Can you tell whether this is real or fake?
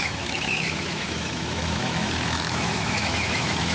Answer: fake